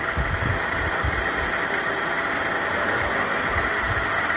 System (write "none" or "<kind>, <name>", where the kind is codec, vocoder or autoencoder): none